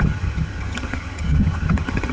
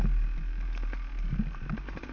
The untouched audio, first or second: second